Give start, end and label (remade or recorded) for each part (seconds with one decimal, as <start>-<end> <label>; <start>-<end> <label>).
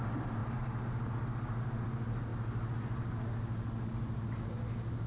0.0-5.1 recorded